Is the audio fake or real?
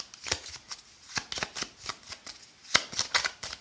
real